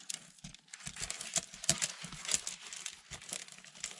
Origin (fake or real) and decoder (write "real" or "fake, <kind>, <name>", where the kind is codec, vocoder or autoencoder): real